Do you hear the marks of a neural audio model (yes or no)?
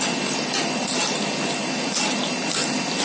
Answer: no